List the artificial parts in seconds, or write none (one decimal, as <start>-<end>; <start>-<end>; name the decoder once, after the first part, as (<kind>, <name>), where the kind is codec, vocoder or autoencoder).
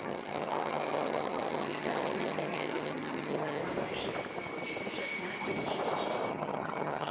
0.0-3.6 (vocoder, HiFi-GAN); 6.3-7.1